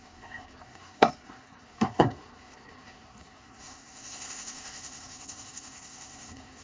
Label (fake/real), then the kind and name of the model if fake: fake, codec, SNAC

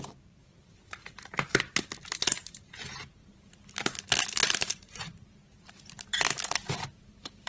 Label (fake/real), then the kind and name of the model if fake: fake, vocoder, BigVGAN v2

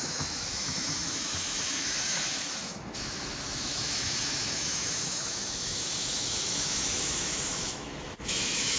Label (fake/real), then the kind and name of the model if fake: fake, autoencoder, DAC-VAE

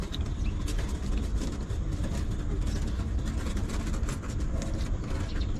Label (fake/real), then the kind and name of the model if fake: real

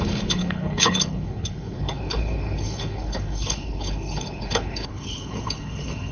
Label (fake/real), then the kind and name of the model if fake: fake, codec, HILCodec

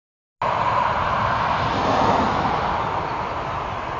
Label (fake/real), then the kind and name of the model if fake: real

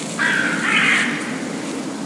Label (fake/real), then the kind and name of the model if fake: real